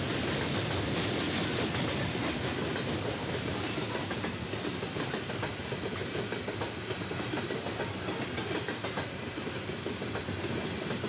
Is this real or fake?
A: real